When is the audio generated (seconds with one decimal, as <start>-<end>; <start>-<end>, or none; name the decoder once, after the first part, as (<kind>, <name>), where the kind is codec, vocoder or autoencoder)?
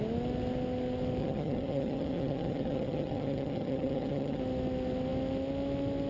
1.2-4.4 (vocoder, HiFi-GAN)